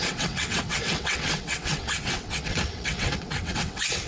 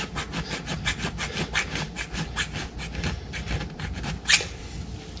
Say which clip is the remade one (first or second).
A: first